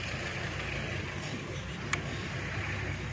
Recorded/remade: recorded